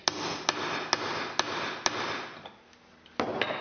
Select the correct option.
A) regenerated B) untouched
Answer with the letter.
B